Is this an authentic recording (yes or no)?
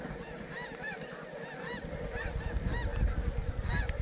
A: yes